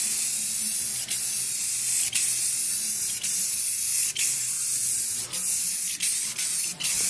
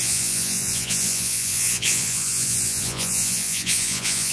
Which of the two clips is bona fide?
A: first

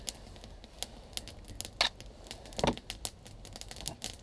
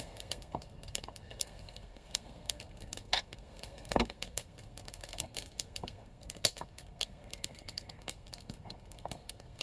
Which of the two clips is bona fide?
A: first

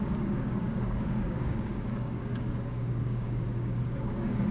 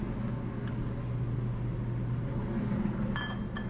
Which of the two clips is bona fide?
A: second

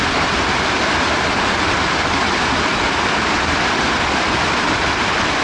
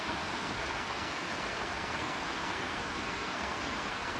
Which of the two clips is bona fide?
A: first